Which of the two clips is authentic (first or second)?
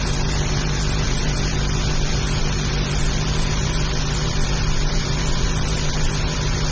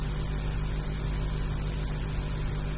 second